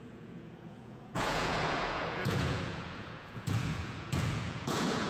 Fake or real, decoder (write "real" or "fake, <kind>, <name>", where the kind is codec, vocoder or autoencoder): fake, vocoder, Vocos